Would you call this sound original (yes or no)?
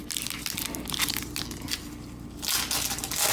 yes